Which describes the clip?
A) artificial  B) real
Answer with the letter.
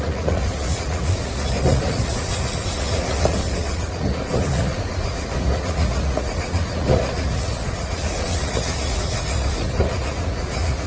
A